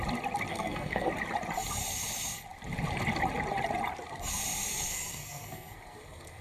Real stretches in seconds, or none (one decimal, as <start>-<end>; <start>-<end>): 0.0-0.5; 1.1-4.7